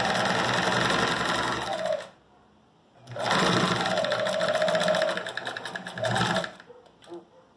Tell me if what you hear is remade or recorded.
recorded